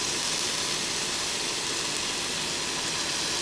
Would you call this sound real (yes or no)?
yes